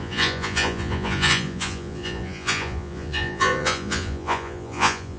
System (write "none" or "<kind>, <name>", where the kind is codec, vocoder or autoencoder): vocoder, Vocos